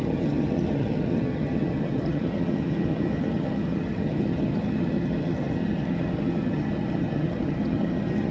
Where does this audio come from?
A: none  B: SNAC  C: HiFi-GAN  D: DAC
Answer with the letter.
C